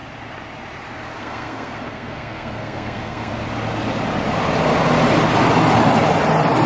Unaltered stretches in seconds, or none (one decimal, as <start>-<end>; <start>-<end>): 0.0-1.2; 3.3-6.7